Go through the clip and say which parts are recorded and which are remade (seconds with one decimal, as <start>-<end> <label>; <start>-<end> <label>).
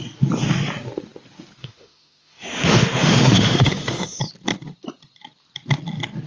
0.0-1.6 recorded; 1.6-4.2 remade; 4.2-6.3 recorded